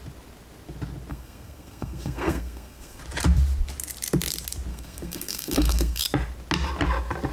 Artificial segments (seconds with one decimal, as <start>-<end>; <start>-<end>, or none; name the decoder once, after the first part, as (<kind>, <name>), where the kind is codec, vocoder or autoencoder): 1.1-3.0 (codec, SNAC); 4.7-6.0